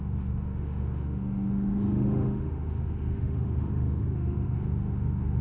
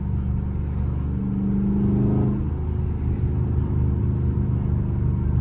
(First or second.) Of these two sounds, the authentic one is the second